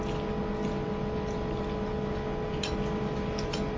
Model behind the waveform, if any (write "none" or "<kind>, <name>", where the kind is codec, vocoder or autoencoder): none